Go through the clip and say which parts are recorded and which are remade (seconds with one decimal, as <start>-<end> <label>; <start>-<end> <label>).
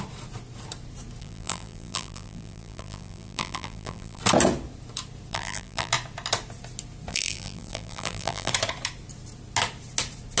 0.0-1.2 recorded; 1.2-4.2 remade; 4.2-5.3 recorded; 5.3-5.9 remade; 5.9-7.1 recorded; 7.1-8.5 remade; 8.5-10.4 recorded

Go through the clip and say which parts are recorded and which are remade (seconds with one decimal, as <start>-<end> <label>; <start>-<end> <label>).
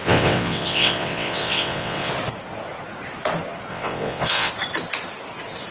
0.0-2.1 remade; 2.1-3.7 recorded; 3.7-4.5 remade; 4.5-5.7 recorded